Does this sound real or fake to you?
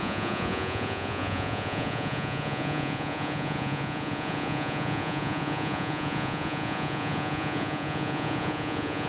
fake